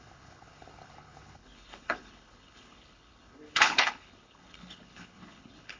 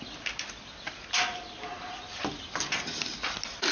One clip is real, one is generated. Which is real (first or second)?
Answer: second